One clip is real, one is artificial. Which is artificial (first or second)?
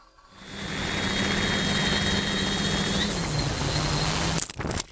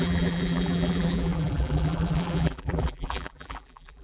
second